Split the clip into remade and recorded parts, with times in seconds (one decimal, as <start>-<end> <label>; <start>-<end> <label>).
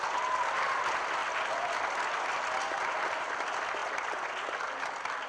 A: 0.0-5.3 recorded